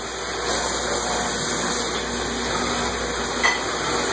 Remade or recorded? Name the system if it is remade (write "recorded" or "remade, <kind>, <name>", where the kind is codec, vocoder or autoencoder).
recorded